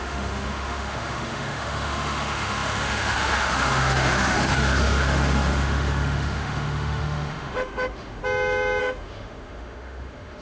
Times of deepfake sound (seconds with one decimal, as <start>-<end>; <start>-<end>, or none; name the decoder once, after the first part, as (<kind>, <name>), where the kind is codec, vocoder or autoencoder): 0.0-8.2 (autoencoder, DAC-VAE); 8.8-10.4